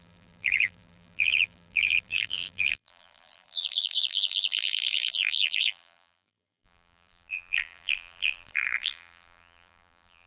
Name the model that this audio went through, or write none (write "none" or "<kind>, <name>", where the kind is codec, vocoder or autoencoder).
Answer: vocoder, BigVGAN v2